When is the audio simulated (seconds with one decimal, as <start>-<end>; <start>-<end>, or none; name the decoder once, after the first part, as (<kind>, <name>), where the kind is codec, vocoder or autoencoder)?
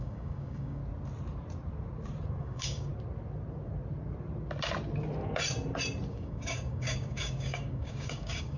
0.0-0.8 (codec, DAC); 2.4-2.9; 6.1-8.6